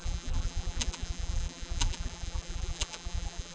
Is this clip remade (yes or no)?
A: yes